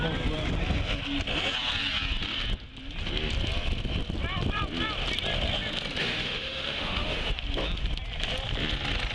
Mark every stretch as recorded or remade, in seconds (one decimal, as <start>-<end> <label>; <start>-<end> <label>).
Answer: 0.0-6.0 recorded; 6.0-7.3 remade; 7.3-9.1 recorded